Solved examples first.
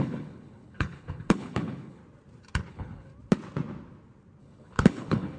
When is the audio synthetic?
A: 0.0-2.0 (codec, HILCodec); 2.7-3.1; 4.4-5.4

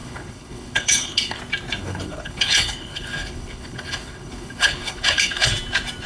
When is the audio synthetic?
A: 0.0-1.4 (codec, HILCodec); 1.8-5.5

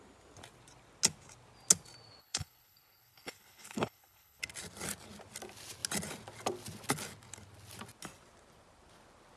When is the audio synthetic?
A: 2.2-4.4 (codec, HILCodec)

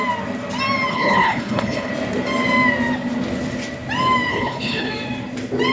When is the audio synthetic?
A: 0.9-1.9 (codec, HILCodec); 4.3-4.9

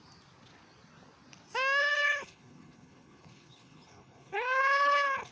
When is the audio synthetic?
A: 1.8-5.3 (codec, HILCodec)

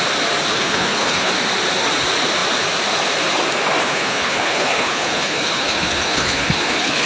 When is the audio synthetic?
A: 0.5-1.3 (codec, HILCodec); 3.8-7.1